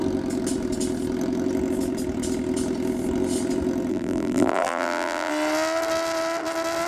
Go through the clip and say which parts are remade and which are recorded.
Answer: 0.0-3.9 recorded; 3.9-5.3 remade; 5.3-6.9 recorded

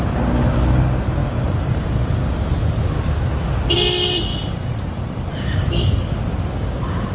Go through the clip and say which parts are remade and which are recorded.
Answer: 0.0-1.2 recorded; 1.2-2.2 remade; 2.2-4.3 recorded; 4.3-5.6 remade; 5.6-7.1 recorded

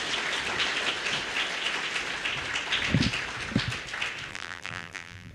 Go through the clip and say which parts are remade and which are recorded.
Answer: 0.0-4.3 recorded; 4.3-5.3 remade

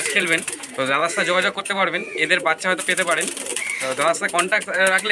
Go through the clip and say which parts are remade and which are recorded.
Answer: 0.0-1.0 remade; 1.0-1.6 recorded; 1.6-2.0 remade; 2.0-2.8 recorded; 2.8-5.1 remade

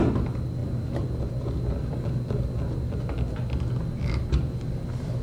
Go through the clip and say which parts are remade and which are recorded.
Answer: 0.0-5.2 recorded

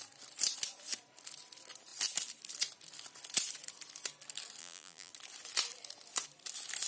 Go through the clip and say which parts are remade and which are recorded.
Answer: 0.0-4.6 recorded; 4.6-5.1 remade; 5.1-6.9 recorded